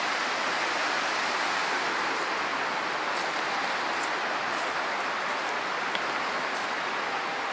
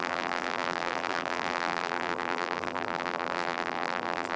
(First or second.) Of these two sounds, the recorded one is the first